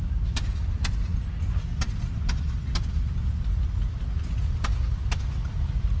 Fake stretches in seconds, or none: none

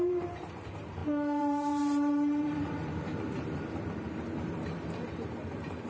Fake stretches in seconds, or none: 0.0-5.9 (vocoder, BigVGAN v2)

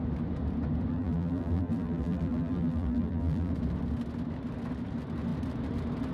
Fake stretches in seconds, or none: 0.9-3.5 (vocoder, BigVGAN v2)

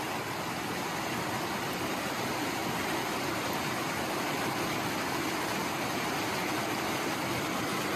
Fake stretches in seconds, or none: none

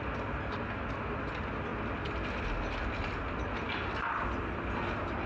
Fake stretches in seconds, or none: none